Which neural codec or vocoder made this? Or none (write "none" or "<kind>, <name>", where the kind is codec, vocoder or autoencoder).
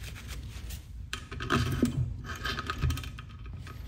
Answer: vocoder, BigVGAN v2